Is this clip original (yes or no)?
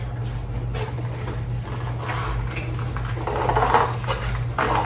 yes